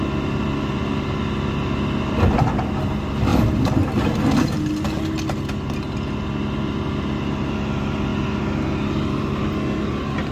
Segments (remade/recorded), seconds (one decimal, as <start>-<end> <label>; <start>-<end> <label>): 0.0-10.3 recorded